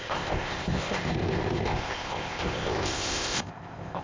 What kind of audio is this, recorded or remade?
remade